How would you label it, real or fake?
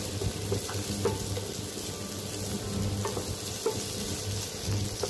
real